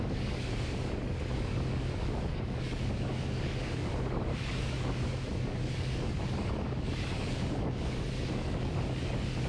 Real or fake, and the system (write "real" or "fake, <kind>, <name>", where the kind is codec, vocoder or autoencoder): fake, codec, DAC